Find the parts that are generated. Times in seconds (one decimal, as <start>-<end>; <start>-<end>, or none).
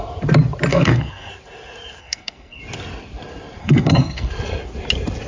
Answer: 0.7-1.3; 2.0-2.6; 3.6-4.3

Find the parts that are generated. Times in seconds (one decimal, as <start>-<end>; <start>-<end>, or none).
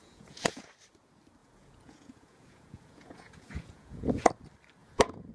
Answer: 0.0-0.7; 1.4-4.3; 4.8-5.3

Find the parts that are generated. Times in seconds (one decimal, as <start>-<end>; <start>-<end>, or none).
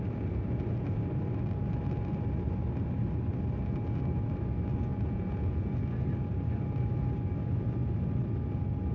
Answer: 4.9-5.7